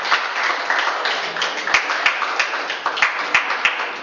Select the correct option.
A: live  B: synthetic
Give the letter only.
A